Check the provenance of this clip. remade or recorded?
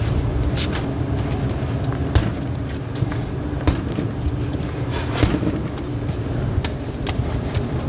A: recorded